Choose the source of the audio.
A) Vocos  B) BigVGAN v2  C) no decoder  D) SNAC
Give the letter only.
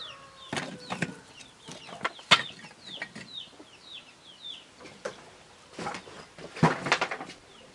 C